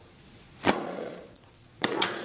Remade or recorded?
remade